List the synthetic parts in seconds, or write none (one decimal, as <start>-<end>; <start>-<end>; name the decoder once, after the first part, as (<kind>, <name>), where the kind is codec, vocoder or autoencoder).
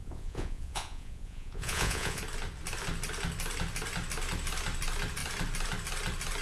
0.0-2.2 (vocoder, Vocos)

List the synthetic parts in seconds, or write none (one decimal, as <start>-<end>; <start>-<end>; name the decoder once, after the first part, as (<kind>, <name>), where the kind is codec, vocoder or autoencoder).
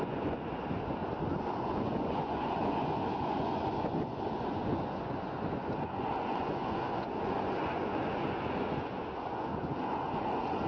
0.0-1.0 (vocoder, Vocos); 1.5-10.7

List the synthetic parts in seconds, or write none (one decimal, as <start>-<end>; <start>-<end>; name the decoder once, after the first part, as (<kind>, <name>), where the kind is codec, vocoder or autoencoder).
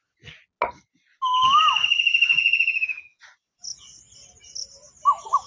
2.3-3.2 (vocoder, Vocos)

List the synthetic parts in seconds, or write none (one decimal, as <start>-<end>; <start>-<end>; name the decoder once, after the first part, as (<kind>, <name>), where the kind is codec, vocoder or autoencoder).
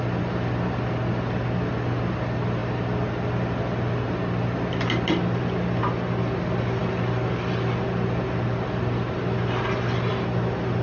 none